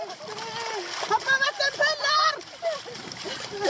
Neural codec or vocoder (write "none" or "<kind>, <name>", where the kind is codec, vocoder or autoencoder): vocoder, BigVGAN v2